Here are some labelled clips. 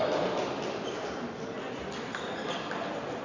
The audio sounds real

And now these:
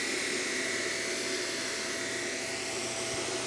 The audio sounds real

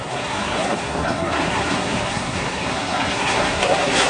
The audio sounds fake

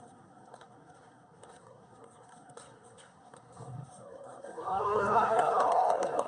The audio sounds fake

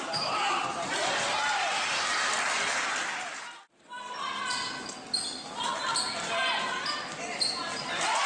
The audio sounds real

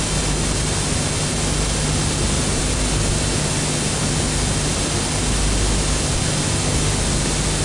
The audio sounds real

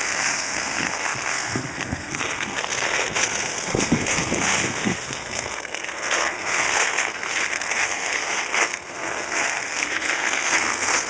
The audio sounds fake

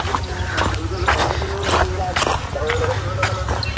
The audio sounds real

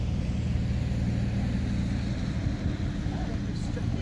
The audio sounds real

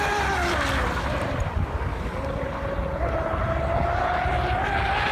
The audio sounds real